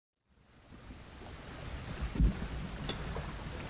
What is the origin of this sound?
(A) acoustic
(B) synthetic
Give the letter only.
A